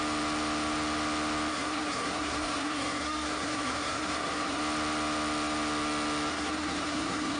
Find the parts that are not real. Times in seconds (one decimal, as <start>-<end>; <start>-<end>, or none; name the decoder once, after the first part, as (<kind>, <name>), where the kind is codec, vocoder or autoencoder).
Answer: 1.5-4.6 (codec, SNAC); 6.3-7.4